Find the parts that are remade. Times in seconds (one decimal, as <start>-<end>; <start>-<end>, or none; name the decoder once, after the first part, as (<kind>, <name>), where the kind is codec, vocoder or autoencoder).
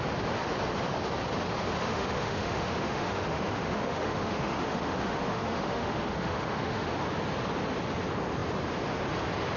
1.8-6.9 (autoencoder, DAC-VAE)